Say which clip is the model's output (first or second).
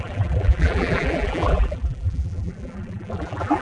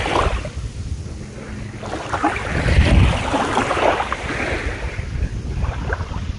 first